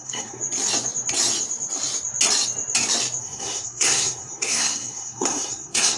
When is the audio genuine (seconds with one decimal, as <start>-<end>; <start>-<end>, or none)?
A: 0.4-3.2